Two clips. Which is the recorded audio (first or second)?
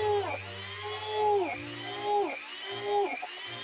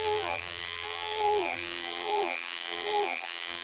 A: first